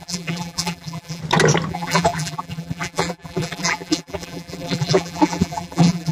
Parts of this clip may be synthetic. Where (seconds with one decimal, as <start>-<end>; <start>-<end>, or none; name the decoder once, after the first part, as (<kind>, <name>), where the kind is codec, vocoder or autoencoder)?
0.0-1.2 (vocoder, BigVGAN v2); 1.7-6.1